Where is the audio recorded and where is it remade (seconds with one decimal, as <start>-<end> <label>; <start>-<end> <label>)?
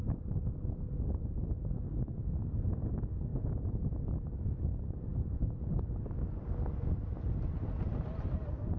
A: 0.0-3.3 recorded; 3.3-4.1 remade; 4.1-8.8 recorded